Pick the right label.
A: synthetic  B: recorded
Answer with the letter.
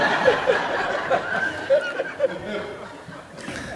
B